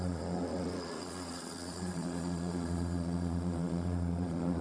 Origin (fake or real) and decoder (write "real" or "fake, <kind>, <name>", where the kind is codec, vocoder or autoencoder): fake, vocoder, Vocos